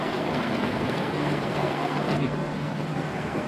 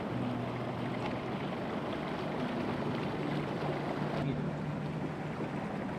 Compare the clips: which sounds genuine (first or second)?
second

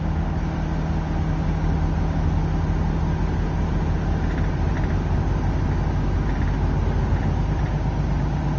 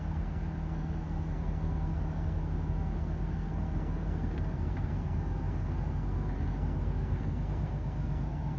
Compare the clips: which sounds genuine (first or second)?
first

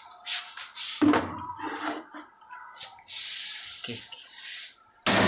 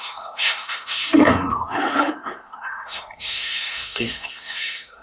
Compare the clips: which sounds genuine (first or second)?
first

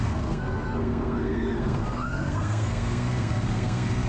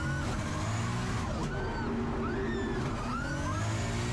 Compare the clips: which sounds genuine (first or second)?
second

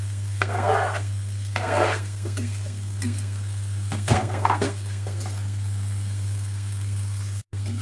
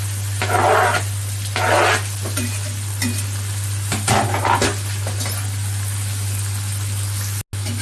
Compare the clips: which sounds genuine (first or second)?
second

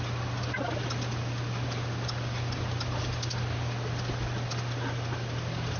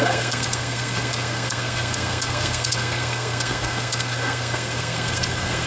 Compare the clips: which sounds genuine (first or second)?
first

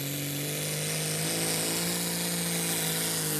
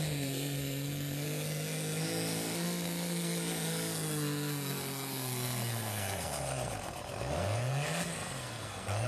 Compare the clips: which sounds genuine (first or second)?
first